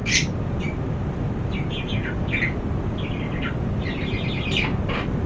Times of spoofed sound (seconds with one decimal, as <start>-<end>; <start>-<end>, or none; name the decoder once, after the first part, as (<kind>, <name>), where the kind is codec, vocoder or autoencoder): none